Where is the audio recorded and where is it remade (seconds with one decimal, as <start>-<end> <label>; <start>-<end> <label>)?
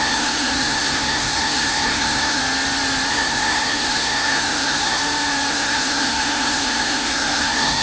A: 0.0-2.4 remade; 2.4-3.1 recorded; 3.1-5.0 remade; 5.0-5.5 recorded; 5.5-7.8 remade